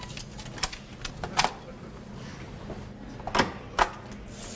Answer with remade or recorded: recorded